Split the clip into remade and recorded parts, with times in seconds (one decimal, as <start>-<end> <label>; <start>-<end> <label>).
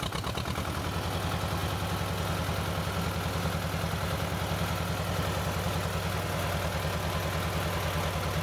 0.0-8.4 recorded